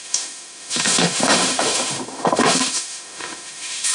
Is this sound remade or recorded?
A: remade